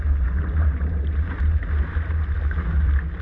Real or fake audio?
real